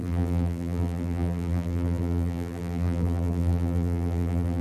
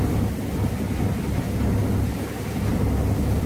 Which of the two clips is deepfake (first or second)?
first